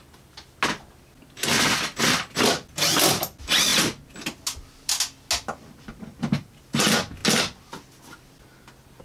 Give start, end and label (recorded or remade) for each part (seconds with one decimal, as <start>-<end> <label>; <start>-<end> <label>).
0.0-9.0 recorded